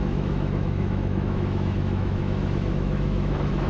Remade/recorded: remade